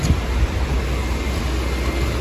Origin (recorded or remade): recorded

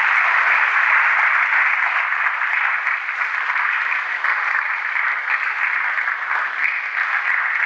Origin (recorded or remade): recorded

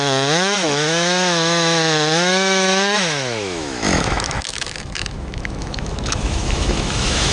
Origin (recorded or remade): remade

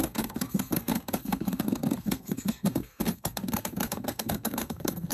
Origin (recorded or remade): remade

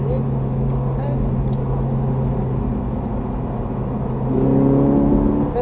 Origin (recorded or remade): recorded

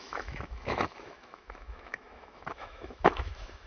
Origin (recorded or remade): remade